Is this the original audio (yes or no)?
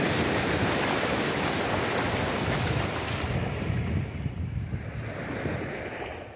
yes